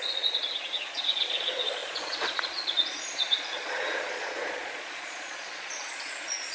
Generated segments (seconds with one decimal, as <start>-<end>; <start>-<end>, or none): 0.0-6.5

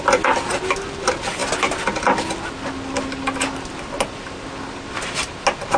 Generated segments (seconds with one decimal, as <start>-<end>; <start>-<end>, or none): none

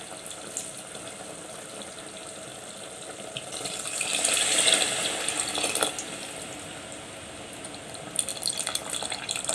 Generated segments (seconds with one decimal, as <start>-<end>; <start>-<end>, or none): none

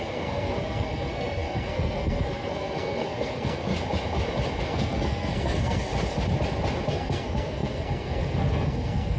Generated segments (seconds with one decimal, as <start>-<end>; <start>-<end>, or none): 0.0-3.7; 4.6-5.9; 6.9-9.2

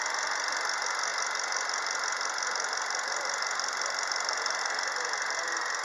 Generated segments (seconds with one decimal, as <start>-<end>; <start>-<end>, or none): none

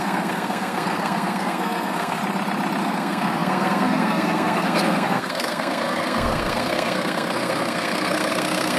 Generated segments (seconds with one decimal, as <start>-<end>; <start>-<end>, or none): 0.0-2.2; 2.8-8.8

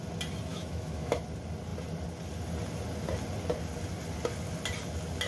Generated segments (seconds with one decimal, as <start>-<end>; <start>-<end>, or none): 0.5-1.2

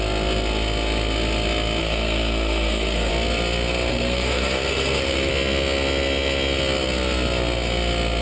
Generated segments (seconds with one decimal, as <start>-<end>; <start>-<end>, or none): 1.8-3.1; 3.9-5.3